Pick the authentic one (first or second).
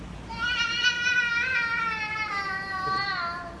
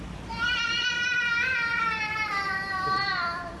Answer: first